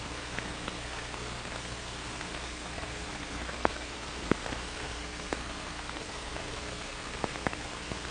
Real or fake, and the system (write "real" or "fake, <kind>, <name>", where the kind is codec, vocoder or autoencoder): fake, codec, SNAC